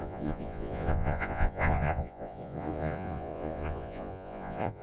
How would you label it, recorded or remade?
remade